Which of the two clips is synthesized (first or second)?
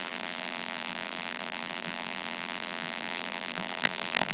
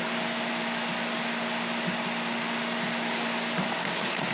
first